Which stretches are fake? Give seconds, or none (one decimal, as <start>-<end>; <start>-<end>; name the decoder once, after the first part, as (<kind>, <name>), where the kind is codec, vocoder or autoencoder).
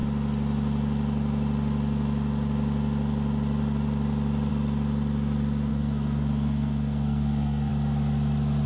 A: 5.7-7.7 (codec, SNAC)